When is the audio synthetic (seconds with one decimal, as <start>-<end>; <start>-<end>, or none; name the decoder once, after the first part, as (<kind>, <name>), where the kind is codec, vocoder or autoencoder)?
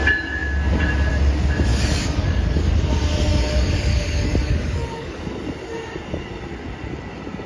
1.7-2.7 (codec, DAC); 3.3-5.2